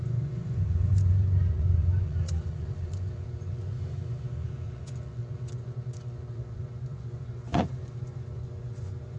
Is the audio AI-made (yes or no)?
yes